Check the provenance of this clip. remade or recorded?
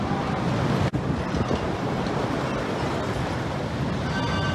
recorded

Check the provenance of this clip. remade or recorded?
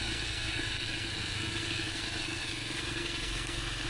remade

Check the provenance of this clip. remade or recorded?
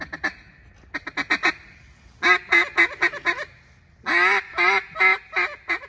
recorded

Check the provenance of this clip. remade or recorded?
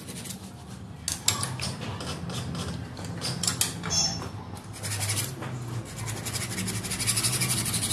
recorded